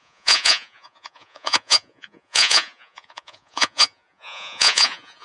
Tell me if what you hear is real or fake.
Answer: fake